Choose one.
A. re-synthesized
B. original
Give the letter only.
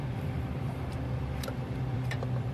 A